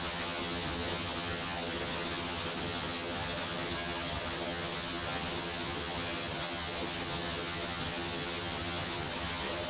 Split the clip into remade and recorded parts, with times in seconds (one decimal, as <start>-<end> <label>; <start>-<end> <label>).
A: 0.0-9.7 remade

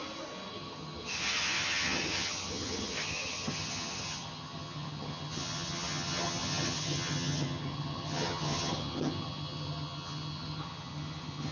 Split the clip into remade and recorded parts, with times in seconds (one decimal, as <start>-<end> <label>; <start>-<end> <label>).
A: 0.0-0.5 recorded; 0.5-11.5 remade

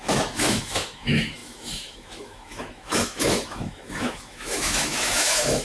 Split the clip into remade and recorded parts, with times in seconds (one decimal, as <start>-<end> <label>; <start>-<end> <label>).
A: 0.0-5.6 remade

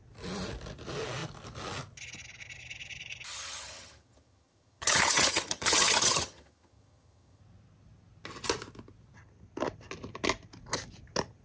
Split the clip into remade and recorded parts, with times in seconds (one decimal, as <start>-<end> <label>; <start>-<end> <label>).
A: 0.0-3.3 recorded; 3.3-7.4 remade; 7.4-11.4 recorded